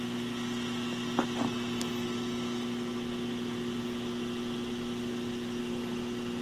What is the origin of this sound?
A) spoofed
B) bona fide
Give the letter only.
B